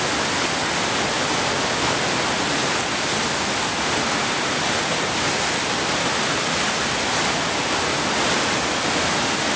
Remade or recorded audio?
recorded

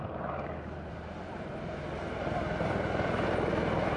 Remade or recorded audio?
remade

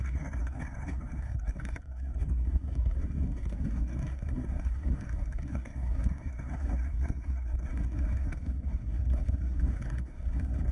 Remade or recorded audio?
remade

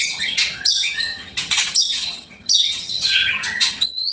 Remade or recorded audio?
remade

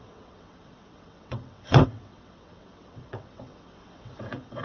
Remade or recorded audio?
remade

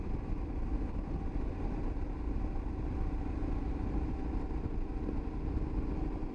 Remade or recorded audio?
recorded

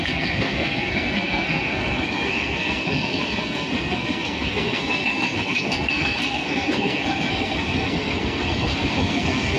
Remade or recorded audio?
remade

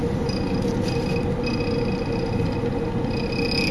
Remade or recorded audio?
recorded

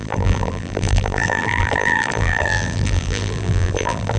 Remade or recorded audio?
remade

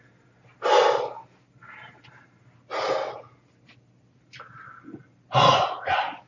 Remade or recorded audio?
recorded